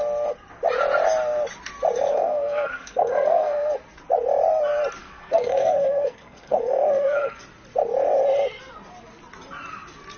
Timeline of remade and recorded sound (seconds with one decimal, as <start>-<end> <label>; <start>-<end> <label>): 0.0-2.1 recorded; 2.1-3.7 remade; 3.7-5.0 recorded; 5.0-7.4 remade; 7.4-10.2 recorded